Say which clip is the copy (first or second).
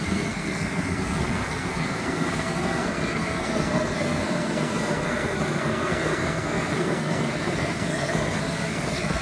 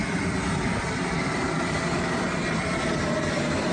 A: first